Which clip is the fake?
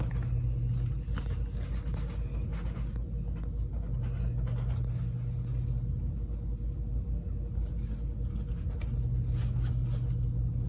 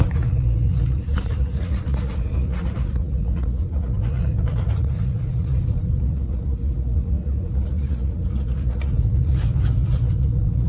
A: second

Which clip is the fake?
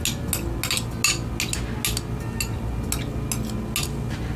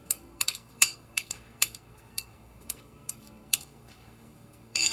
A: second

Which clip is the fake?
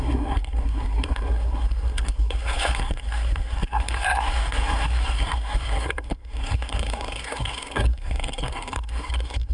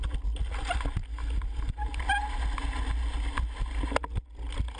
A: first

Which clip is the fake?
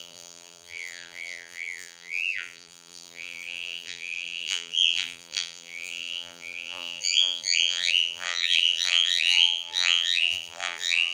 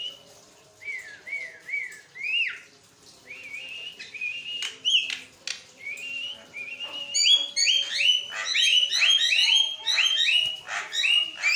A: first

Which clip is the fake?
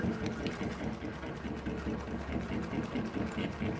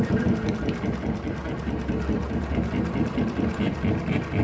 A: second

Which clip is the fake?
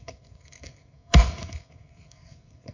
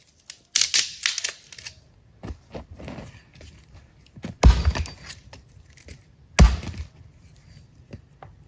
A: first